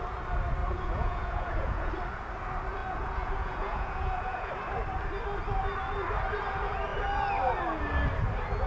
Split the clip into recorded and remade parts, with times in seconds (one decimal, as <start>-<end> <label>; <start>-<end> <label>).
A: 0.0-0.6 recorded; 0.6-1.9 remade; 1.9-2.8 recorded; 2.8-4.5 remade; 4.5-8.7 recorded